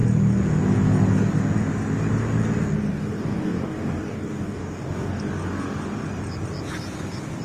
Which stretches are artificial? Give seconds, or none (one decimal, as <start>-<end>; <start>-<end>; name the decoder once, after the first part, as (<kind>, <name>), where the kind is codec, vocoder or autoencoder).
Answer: 2.9-5.2 (codec, DAC)